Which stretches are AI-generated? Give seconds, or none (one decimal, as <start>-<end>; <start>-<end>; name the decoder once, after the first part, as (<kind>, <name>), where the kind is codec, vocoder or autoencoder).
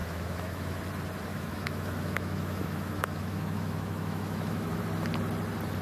0.0-0.8 (autoencoder, DAC-VAE); 1.3-4.8